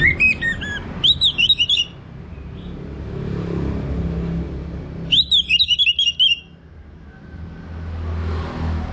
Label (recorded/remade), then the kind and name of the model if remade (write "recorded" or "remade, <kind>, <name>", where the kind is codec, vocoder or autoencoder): recorded